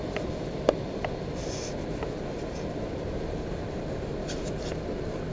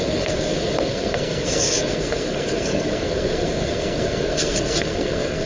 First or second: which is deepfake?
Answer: second